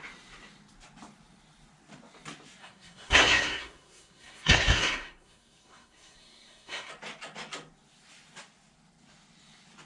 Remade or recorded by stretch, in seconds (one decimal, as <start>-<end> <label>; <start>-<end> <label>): 0.0-2.6 recorded; 2.6-6.9 remade; 6.9-9.9 recorded